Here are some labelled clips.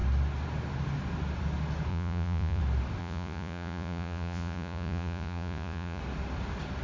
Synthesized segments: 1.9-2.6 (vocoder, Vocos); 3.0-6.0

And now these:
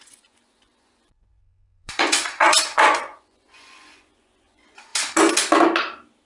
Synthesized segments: 0.0-4.9 (vocoder, Vocos)

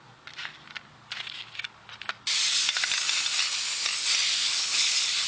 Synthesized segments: 4.4-5.3 (codec, HILCodec)

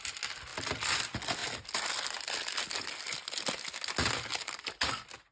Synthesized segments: none

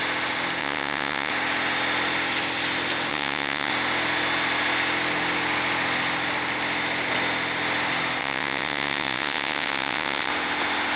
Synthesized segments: 0.6-1.3 (vocoder, WaveNeXt); 3.1-3.7; 8.2-10.3